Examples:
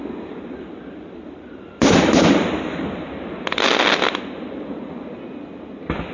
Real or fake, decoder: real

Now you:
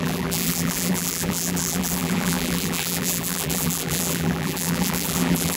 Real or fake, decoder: fake, vocoder, BigVGAN v2